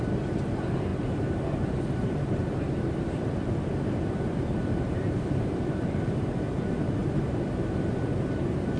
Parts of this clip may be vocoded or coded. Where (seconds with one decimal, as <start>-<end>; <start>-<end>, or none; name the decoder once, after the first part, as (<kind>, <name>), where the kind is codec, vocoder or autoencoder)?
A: 0.9-3.5 (vocoder, BigVGAN v2); 4.3-6.9